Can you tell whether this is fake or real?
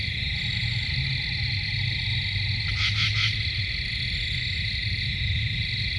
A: real